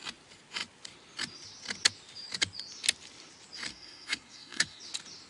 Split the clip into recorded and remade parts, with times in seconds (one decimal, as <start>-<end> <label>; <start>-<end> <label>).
0.0-3.7 recorded; 3.7-4.8 remade; 4.8-5.3 recorded